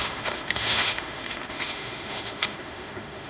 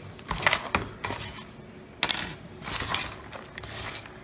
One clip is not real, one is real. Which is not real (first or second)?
first